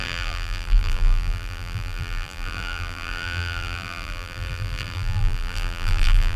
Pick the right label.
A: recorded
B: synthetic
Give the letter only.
B